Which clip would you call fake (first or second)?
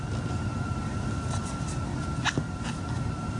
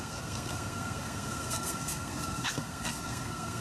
second